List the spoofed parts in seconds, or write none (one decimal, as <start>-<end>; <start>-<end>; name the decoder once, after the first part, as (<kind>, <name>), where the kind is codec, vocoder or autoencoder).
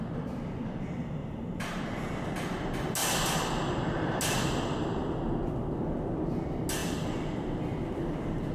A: 1.2-1.8 (vocoder, BigVGAN v2); 3.0-3.5